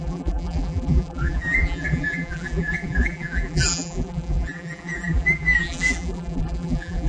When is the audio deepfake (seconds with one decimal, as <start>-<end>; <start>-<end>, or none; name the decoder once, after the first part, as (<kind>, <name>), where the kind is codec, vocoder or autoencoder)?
0.0-7.1 (vocoder, BigVGAN v2)